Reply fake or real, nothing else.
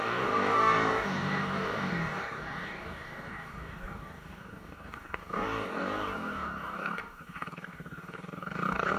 fake